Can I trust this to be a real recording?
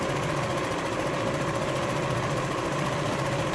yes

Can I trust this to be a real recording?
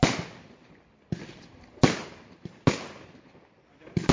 yes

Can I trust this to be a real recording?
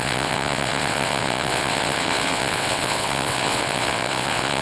no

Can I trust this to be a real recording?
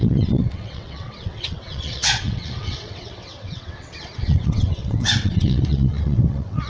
no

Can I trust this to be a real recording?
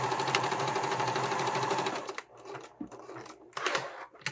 yes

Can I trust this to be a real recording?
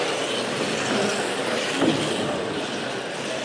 yes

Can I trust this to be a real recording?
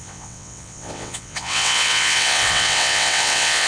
no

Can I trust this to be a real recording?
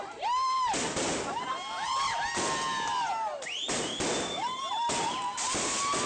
yes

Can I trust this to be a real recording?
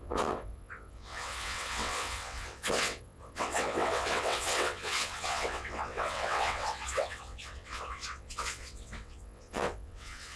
no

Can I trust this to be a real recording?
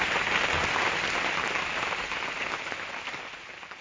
yes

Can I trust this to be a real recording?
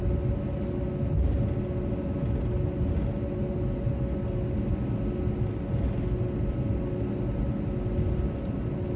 yes